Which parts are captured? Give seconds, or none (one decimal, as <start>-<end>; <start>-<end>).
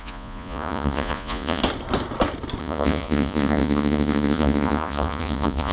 1.6-2.6